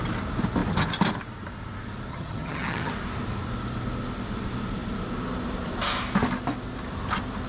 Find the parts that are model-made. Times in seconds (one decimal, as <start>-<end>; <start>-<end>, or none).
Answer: 2.1-2.9